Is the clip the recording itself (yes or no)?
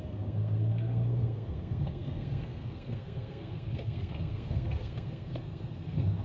no